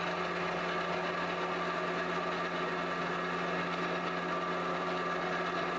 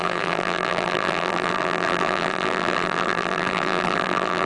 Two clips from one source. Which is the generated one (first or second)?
second